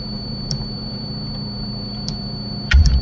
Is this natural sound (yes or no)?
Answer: no